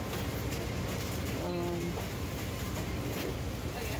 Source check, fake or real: real